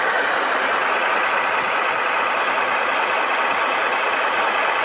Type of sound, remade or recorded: recorded